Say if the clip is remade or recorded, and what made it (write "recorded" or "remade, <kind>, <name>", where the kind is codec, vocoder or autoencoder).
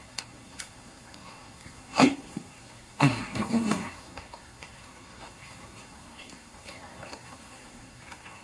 remade, codec, SNAC